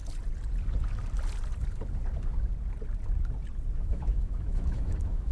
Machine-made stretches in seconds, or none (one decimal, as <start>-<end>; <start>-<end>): 3.8-5.3